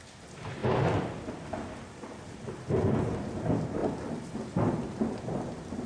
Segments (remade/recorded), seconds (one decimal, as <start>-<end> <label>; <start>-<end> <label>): 0.0-0.6 recorded; 0.6-2.2 remade; 2.2-3.8 recorded; 3.8-4.8 remade; 4.8-5.9 recorded